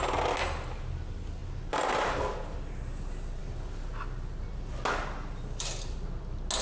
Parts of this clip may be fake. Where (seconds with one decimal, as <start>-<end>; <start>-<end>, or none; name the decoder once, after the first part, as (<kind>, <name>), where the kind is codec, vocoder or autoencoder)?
none